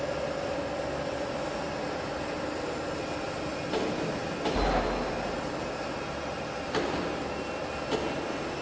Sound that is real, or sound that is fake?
real